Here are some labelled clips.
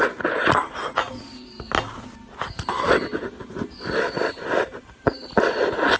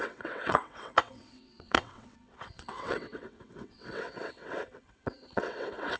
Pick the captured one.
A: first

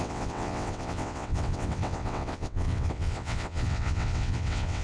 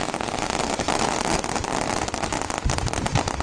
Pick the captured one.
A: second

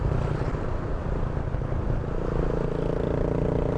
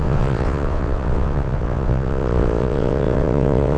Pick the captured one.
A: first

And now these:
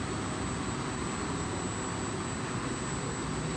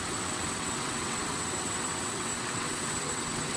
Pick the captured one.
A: first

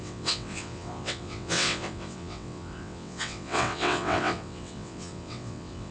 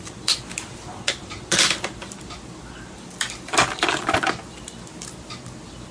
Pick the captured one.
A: second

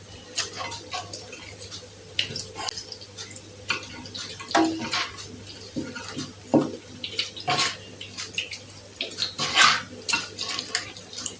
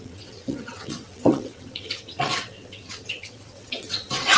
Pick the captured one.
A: first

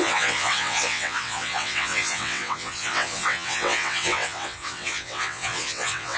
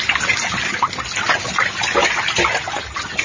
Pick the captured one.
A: second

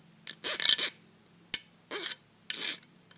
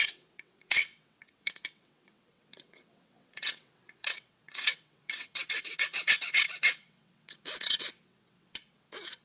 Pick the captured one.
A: first